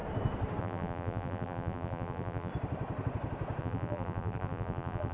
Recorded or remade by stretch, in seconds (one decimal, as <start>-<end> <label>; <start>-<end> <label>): 0.0-0.6 recorded; 0.6-2.5 remade; 2.5-3.6 recorded; 3.6-5.1 remade